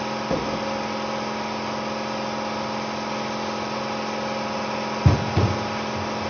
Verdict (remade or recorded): recorded